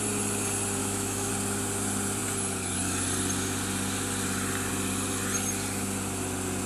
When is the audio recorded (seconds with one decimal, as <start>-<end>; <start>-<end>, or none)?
0.0-0.8; 1.3-6.7